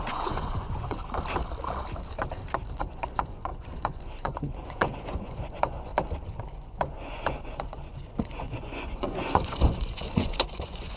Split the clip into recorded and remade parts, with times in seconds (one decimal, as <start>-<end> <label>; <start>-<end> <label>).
0.0-1.0 remade; 1.0-2.8 recorded; 2.8-5.9 remade; 5.9-6.5 recorded; 6.5-11.0 remade